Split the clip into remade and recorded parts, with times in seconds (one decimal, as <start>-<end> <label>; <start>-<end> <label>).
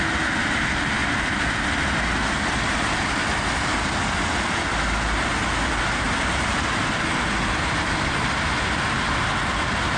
0.0-10.0 recorded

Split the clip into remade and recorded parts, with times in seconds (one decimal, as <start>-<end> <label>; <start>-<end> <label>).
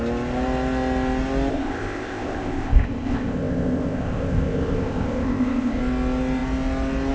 0.0-1.5 recorded; 1.5-5.8 remade; 5.8-7.1 recorded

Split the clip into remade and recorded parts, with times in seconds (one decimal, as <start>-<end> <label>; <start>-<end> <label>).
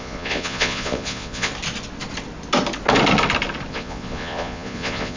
0.0-1.5 remade; 1.5-3.7 recorded; 3.7-5.2 remade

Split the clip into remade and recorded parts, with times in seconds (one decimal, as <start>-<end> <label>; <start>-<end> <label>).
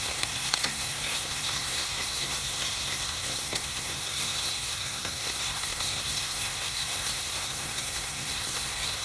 0.0-9.0 remade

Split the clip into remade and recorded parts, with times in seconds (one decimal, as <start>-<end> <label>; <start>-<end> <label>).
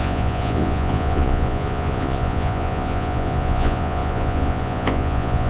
0.0-5.5 remade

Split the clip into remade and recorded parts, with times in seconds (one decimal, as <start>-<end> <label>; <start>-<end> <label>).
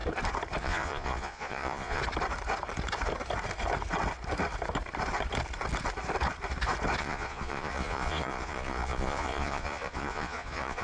0.0-0.6 recorded; 0.6-2.0 remade; 2.0-7.0 recorded; 7.0-10.8 remade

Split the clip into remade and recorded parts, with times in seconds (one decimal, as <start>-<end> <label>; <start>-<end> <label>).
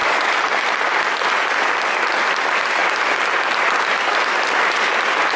0.0-2.8 remade; 2.8-4.5 recorded; 4.5-5.4 remade